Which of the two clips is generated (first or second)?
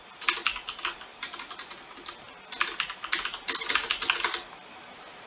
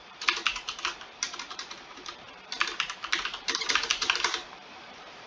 second